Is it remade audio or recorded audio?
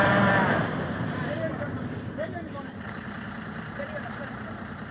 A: remade